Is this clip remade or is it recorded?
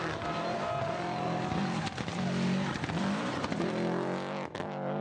recorded